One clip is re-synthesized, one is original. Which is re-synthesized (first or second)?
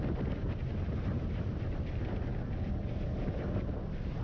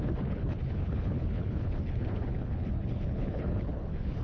second